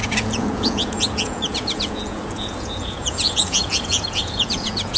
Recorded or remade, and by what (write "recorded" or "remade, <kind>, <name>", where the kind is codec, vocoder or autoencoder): remade, vocoder, Vocos